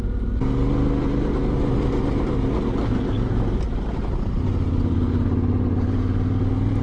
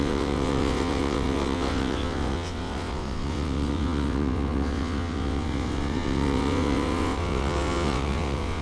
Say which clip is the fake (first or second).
second